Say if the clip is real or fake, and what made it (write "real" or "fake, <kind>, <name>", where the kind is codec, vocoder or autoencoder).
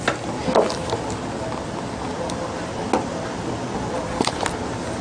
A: real